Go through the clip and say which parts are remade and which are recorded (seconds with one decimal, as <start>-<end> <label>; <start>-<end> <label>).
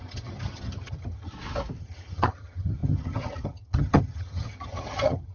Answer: 0.0-1.3 remade; 1.3-1.8 recorded; 1.8-5.3 remade